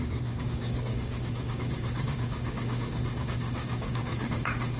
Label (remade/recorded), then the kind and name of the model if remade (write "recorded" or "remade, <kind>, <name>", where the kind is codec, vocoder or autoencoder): remade, codec, DAC